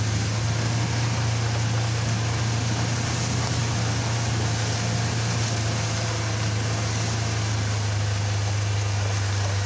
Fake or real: real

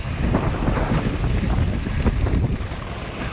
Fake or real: real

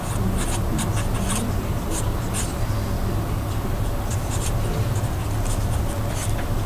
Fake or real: real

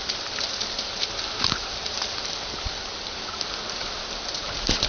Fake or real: real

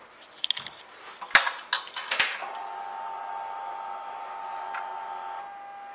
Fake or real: real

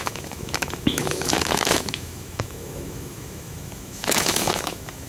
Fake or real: fake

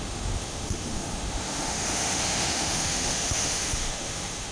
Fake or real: fake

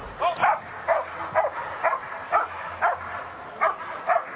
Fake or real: real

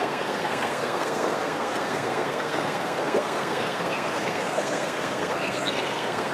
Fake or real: fake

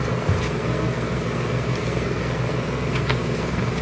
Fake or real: fake